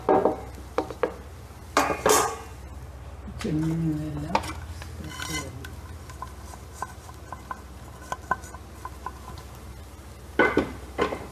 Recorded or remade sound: recorded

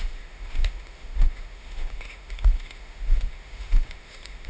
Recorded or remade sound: remade